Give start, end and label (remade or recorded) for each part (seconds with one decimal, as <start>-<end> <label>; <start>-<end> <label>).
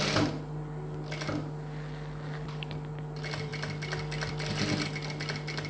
0.0-5.7 recorded